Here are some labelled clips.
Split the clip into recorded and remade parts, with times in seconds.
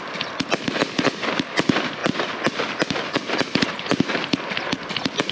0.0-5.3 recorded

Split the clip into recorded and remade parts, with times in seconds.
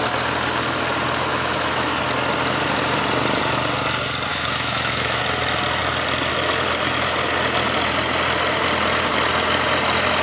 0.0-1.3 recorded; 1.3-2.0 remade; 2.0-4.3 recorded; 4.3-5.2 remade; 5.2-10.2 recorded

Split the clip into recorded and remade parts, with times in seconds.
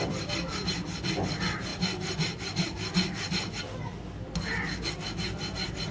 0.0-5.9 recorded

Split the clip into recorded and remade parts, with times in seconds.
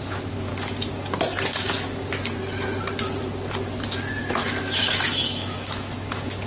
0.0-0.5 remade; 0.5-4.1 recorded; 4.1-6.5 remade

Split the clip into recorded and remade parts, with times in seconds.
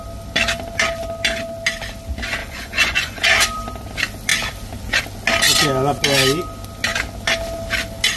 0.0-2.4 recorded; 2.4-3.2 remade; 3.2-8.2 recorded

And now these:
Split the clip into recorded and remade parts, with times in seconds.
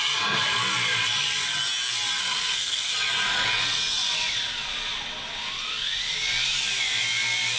0.0-2.2 recorded; 2.2-2.9 remade; 2.9-7.6 recorded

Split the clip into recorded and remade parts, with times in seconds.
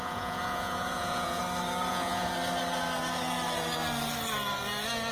0.0-1.4 remade; 1.4-1.9 recorded; 1.9-2.3 remade; 2.3-5.1 recorded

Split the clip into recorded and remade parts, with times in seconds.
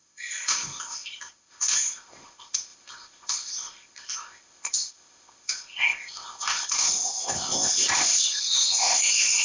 0.0-9.4 remade